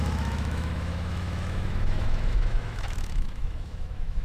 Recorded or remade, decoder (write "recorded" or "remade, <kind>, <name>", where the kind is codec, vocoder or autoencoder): remade, autoencoder, DAC-VAE